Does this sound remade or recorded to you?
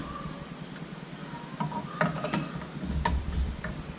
recorded